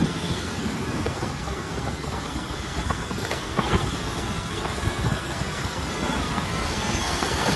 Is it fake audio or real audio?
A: fake